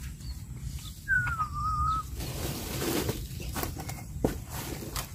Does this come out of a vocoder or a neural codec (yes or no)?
yes